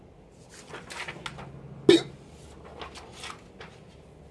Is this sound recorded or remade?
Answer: recorded